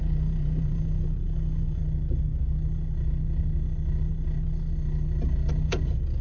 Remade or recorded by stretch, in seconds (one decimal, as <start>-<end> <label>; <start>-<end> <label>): 0.0-1.8 remade; 1.8-5.5 recorded; 5.5-6.2 remade